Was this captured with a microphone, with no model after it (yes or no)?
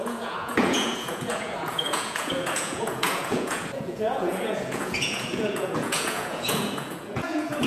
no